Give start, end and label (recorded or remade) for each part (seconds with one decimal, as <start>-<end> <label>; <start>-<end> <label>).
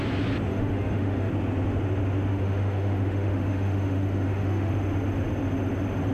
0.0-0.5 recorded; 0.5-1.3 remade; 1.3-2.3 recorded; 2.3-4.7 remade; 4.7-6.1 recorded